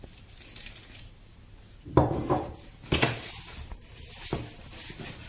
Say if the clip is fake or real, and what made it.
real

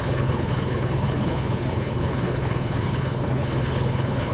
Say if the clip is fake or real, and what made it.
fake, codec, HILCodec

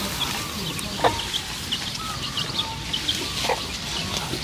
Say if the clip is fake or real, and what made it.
real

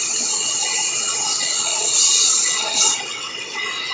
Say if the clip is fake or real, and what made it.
fake, vocoder, WaveNeXt